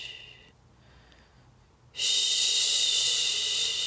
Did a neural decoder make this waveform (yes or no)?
no